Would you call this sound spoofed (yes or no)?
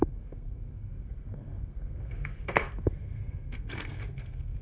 yes